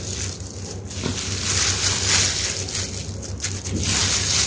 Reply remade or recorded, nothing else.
recorded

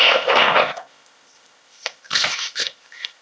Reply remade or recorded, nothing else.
remade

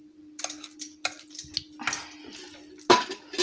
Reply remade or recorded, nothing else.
recorded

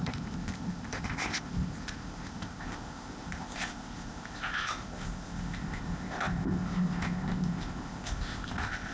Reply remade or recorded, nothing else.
remade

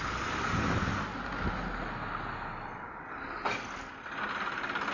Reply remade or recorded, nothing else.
recorded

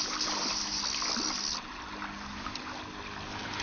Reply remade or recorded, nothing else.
recorded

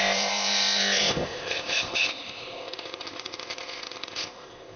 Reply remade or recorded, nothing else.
remade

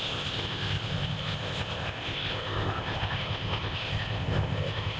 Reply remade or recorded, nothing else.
remade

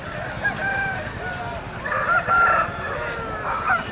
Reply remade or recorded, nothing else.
recorded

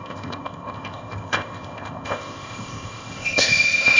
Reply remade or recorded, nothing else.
remade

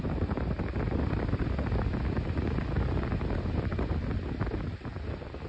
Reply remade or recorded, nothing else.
recorded